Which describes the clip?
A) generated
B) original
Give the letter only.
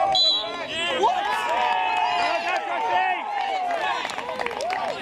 B